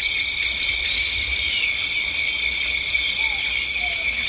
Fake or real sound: real